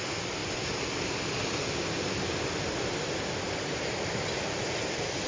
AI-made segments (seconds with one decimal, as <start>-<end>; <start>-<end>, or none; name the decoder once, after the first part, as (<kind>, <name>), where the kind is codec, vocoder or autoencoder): none